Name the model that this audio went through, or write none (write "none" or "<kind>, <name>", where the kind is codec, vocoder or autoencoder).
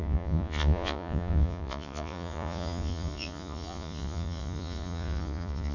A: vocoder, Vocos